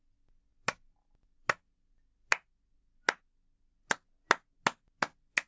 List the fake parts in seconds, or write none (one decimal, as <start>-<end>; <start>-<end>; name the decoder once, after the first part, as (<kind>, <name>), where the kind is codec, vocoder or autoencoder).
none